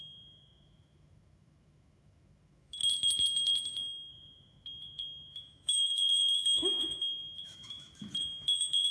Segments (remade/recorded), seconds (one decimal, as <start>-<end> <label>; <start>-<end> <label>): 0.0-2.8 remade; 2.8-4.1 recorded; 4.1-8.9 remade